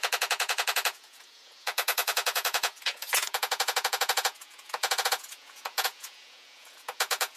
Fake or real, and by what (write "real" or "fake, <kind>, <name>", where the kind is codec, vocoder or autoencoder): fake, vocoder, Vocos